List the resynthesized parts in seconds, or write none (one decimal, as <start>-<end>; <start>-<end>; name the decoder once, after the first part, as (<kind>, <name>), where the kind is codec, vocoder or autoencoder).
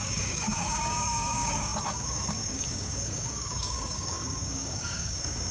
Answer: 0.0-5.5 (codec, DAC)